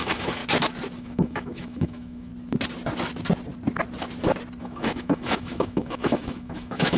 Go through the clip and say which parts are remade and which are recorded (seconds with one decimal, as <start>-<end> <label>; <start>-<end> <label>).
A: 0.0-0.4 remade; 0.4-1.0 recorded; 1.0-2.3 remade; 2.3-4.6 recorded; 4.6-7.0 remade